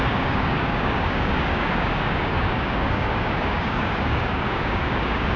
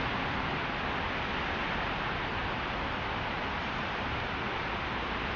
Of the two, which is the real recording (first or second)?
second